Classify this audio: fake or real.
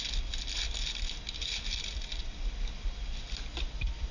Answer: real